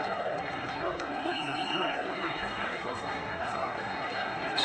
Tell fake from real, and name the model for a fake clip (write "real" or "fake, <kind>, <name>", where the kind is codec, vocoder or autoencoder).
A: fake, codec, SNAC